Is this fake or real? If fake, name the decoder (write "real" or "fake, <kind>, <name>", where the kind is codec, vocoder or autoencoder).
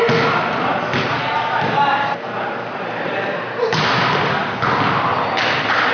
real